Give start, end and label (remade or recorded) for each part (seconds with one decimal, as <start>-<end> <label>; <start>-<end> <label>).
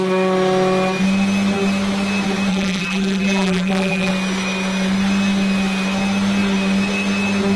0.0-2.5 recorded; 2.5-4.1 remade; 4.1-7.6 recorded